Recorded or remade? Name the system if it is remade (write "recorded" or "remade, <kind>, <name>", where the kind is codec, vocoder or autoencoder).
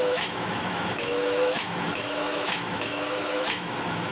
remade, autoencoder, DAC-VAE